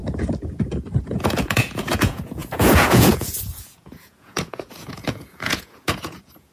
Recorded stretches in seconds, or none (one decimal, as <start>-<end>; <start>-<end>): 0.0-1.0

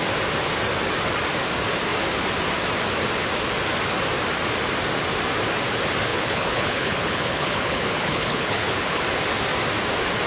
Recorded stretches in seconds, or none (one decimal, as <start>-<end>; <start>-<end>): 0.0-6.1; 9.0-10.3

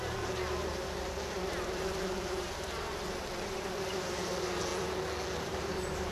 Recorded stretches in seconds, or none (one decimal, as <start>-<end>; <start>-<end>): 4.7-5.4